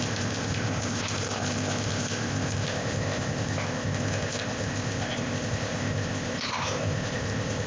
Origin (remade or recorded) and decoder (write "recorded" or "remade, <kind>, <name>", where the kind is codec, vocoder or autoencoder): remade, codec, ZipCodec